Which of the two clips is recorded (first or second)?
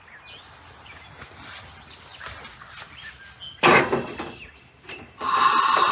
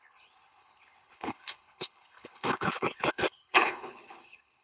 first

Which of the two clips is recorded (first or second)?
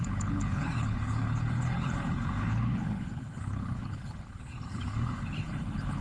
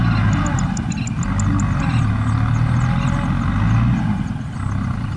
second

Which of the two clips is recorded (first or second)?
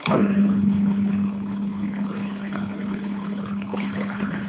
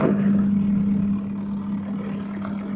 second